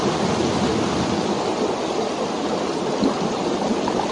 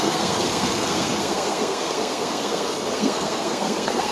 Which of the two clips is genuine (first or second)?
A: first